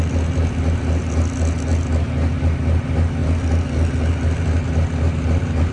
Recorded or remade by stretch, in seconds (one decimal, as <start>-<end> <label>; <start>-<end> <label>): 0.0-5.7 recorded